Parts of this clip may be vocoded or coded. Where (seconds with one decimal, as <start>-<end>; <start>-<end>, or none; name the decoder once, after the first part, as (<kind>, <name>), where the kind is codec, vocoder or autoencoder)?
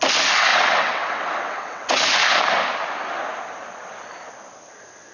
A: 0.5-2.0 (vocoder, WaveNeXt)